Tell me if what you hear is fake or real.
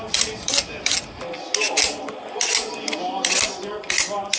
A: real